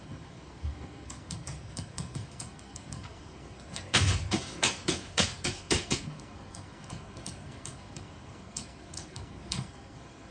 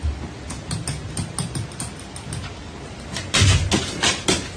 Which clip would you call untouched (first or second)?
second